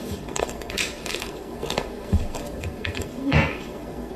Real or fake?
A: fake